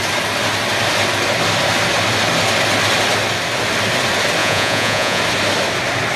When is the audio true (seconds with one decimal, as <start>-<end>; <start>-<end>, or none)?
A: 0.0-4.4; 5.2-6.2